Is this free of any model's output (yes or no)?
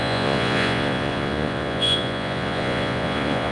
no